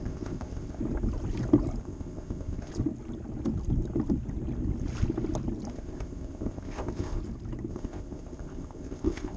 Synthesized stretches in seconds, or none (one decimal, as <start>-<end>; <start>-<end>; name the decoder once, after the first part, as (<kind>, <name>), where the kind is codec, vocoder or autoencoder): 0.0-0.8 (codec, ZipCodec); 1.8-2.7; 5.7-7.2; 7.7-9.4